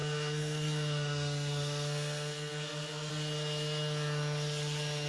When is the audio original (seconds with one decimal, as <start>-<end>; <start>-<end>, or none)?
3.1-5.1